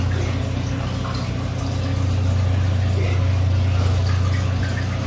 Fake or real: real